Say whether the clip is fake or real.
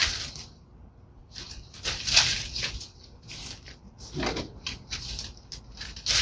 real